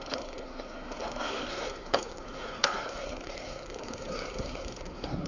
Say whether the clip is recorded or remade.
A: remade